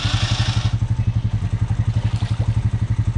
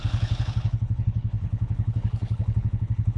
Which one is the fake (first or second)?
second